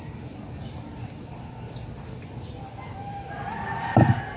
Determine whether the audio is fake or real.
real